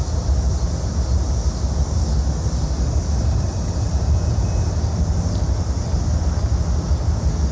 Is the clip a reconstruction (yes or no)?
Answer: no